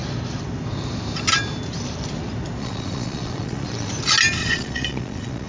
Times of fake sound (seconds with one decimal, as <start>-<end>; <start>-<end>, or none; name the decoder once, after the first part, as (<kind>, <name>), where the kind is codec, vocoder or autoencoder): 2.6-3.9 (vocoder, Vocos); 4.4-5.5